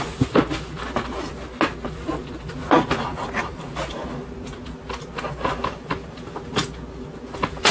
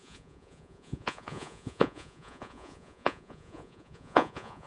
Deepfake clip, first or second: second